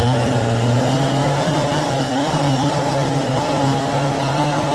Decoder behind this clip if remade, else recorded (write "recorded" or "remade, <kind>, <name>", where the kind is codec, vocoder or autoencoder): recorded